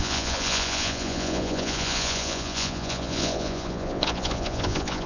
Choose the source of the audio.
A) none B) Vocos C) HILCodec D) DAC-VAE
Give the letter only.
B